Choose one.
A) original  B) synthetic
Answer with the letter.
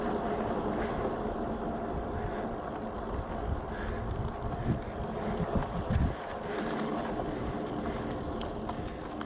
A